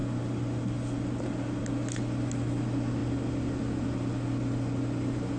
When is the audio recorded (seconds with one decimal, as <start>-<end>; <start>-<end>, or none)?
0.0-5.4

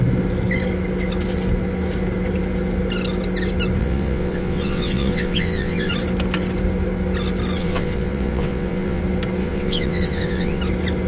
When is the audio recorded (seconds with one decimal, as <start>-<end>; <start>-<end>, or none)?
0.0-3.8; 5.9-7.6; 9.0-9.4; 10.6-11.1